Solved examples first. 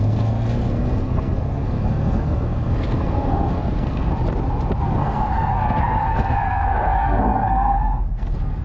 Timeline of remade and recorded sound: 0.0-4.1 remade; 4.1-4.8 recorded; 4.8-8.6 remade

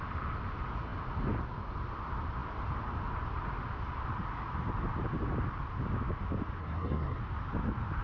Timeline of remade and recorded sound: 0.0-6.6 recorded; 6.6-7.2 remade; 7.2-8.0 recorded

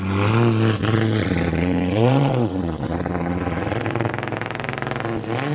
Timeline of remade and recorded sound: 0.0-0.8 recorded; 0.8-4.1 remade; 4.1-5.5 recorded

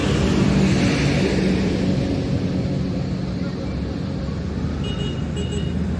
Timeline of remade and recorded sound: 0.0-6.0 recorded

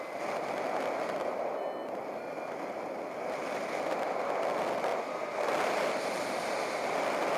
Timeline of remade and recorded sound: 0.0-4.9 recorded; 4.9-5.8 remade; 5.8-7.4 recorded

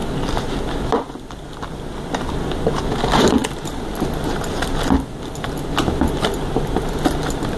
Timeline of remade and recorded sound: 0.0-7.6 recorded

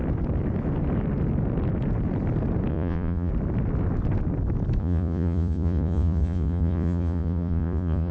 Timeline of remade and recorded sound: 0.0-2.7 recorded; 2.7-3.3 remade; 3.3-4.8 recorded; 4.8-8.1 remade